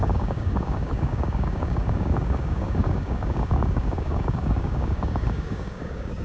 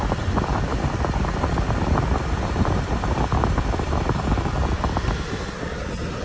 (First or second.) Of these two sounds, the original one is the second